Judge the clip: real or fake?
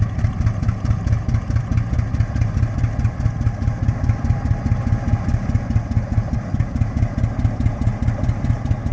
real